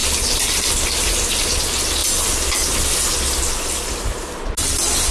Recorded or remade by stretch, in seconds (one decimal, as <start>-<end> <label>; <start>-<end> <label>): 0.0-5.1 recorded